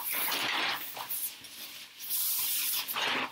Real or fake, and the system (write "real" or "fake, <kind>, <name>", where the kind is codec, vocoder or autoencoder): fake, vocoder, BigVGAN v2